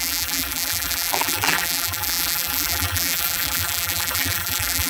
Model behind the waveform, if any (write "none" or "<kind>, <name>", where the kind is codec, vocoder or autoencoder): vocoder, BigVGAN v2